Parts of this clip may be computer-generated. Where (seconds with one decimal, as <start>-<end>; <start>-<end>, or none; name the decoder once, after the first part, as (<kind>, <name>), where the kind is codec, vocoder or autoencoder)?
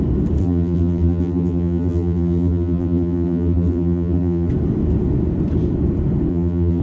0.4-4.5 (vocoder, BigVGAN v2); 6.3-6.8